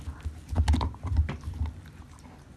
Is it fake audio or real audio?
real